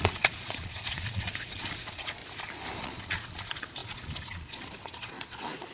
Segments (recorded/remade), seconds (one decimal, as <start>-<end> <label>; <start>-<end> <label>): 0.0-2.2 remade; 2.2-2.8 recorded; 2.8-5.7 remade